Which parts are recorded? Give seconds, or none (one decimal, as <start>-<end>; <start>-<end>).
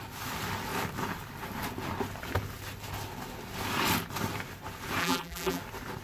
0.0-5.0; 5.6-6.0